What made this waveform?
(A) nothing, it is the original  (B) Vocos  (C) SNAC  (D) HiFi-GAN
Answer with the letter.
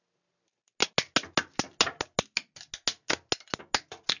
A